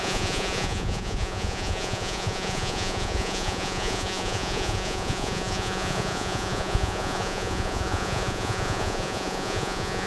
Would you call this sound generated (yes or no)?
yes